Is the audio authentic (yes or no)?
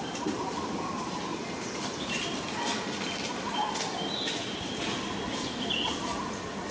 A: yes